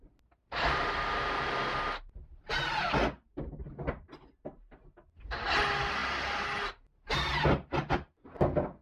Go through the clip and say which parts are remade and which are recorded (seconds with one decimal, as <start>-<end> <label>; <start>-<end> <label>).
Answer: 0.0-8.8 recorded